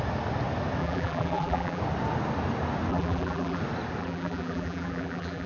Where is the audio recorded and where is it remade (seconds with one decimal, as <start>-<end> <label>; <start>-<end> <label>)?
0.0-0.8 recorded; 0.8-1.8 remade; 1.8-2.9 recorded; 2.9-3.6 remade; 3.6-4.0 recorded; 4.0-5.5 remade